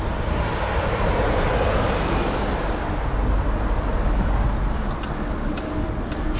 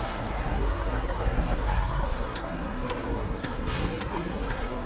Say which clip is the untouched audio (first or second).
first